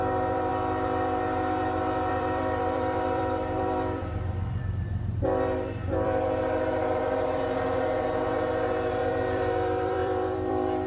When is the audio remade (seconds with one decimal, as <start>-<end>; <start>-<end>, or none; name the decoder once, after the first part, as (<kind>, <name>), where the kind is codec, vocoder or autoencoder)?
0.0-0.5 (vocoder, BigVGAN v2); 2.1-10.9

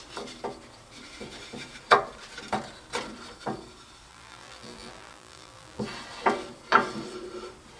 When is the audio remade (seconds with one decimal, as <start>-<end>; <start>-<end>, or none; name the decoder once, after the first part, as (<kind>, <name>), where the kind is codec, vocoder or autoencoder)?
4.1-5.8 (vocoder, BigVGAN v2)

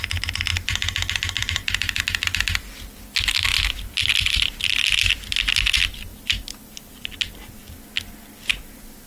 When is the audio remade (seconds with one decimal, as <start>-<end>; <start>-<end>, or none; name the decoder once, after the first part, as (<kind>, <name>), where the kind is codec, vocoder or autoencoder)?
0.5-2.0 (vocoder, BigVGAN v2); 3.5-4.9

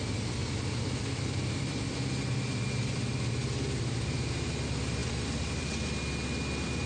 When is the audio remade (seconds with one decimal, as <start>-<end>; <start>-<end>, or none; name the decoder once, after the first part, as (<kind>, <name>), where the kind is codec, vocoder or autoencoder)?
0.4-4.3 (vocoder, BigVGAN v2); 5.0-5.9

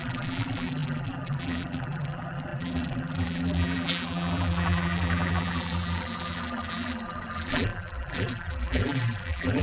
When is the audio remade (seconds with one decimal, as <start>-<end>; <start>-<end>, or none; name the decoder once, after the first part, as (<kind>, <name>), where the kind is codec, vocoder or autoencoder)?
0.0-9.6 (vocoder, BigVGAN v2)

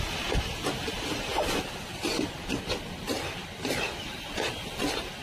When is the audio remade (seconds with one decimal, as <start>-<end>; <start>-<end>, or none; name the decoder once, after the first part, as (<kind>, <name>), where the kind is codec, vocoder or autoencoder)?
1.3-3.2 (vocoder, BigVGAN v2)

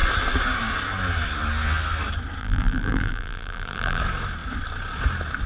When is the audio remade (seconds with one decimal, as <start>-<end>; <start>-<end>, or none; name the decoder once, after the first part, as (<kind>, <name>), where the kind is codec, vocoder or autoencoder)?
2.4-4.0 (vocoder, BigVGAN v2)